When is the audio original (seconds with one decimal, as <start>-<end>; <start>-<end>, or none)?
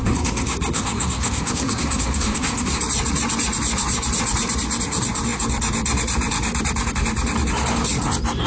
2.8-8.5